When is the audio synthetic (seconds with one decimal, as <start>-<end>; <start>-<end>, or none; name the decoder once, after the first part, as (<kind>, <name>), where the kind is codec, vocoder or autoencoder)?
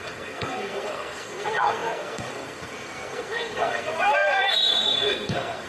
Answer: 0.0-5.7 (codec, SNAC)